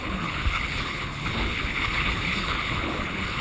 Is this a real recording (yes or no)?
no